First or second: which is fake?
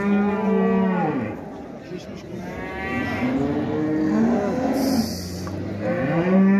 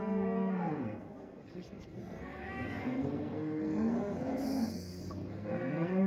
second